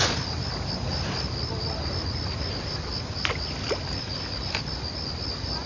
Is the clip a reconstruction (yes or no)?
no